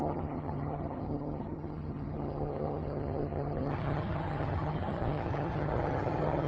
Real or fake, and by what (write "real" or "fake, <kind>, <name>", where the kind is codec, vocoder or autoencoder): fake, vocoder, HiFi-GAN